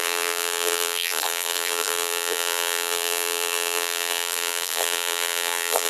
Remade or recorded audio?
remade